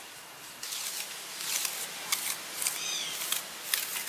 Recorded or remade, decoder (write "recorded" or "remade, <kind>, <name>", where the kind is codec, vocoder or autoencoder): recorded